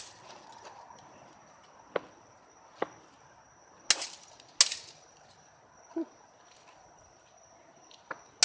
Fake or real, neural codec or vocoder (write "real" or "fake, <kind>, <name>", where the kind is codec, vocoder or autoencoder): real